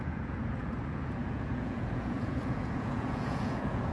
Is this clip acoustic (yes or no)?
no